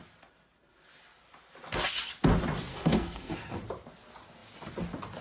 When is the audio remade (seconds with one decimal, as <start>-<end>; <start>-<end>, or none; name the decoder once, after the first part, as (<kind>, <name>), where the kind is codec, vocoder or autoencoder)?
2.7-3.6 (codec, SNAC)